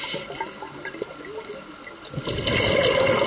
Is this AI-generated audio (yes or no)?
no